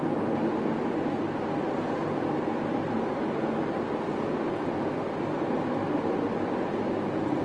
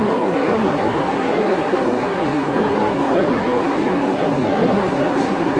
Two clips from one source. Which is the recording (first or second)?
first